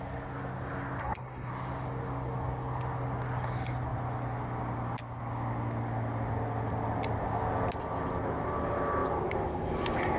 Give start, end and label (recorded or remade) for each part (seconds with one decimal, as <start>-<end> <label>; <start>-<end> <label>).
0.0-1.0 recorded; 1.0-1.5 remade; 1.5-10.2 recorded